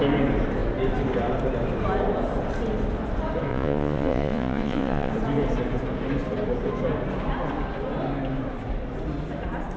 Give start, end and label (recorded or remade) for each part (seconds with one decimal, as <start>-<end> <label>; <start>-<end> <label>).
0.0-3.5 recorded; 3.5-5.1 remade; 5.1-9.8 recorded